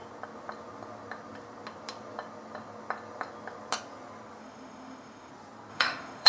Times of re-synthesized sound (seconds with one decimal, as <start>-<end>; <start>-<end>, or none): 4.4-5.3; 5.7-6.3